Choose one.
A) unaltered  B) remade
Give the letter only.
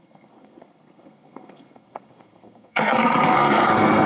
B